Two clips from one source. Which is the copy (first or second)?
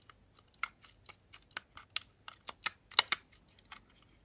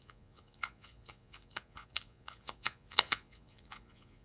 second